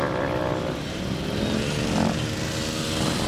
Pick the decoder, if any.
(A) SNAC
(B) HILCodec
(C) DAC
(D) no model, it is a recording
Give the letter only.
D